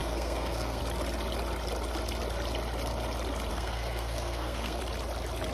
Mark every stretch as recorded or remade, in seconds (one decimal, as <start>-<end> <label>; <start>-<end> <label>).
0.0-0.8 remade; 0.8-3.5 recorded; 3.5-4.8 remade; 4.8-5.5 recorded